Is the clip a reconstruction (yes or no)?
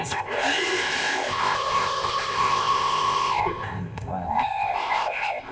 yes